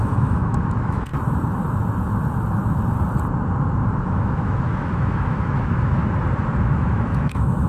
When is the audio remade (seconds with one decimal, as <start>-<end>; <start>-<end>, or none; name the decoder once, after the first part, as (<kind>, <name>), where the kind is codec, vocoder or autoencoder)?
0.0-1.1 (autoencoder, DAC-VAE); 4.0-6.0; 6.6-7.7